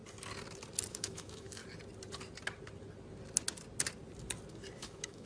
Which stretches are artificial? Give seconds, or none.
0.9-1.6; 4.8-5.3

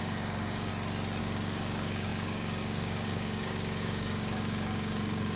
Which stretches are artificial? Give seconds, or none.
0.0-0.7; 1.2-5.4

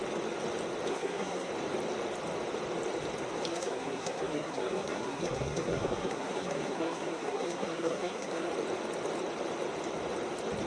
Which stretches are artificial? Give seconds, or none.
0.9-1.5; 3.5-8.5